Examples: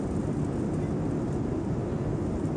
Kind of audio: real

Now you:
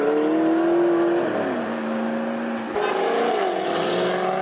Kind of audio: real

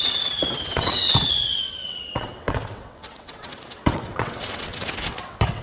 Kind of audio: fake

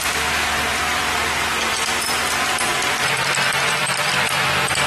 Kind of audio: fake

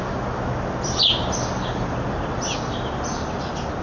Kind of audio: real